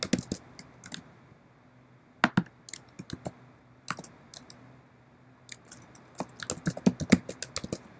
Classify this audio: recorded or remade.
recorded